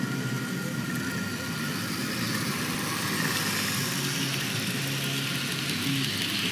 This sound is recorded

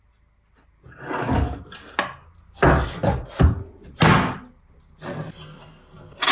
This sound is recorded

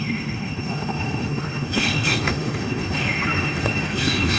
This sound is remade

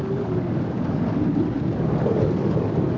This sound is remade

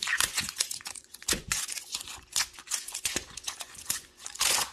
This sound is remade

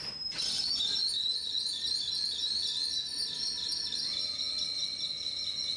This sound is recorded